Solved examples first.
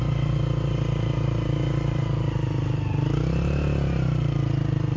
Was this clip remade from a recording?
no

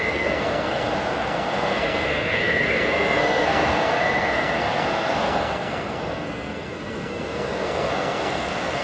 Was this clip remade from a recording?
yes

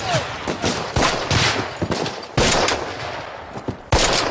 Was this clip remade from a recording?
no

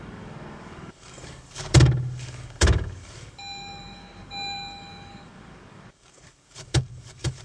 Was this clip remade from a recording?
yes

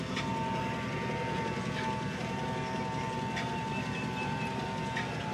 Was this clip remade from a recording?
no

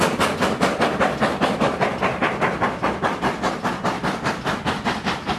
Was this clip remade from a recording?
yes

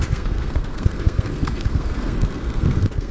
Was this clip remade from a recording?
yes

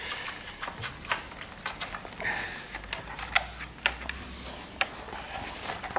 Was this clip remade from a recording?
no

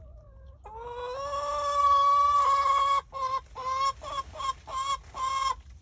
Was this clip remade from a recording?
no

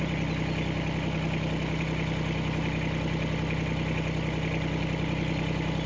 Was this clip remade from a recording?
no